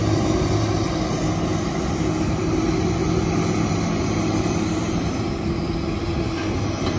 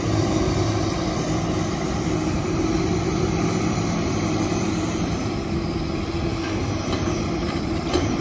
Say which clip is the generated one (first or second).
second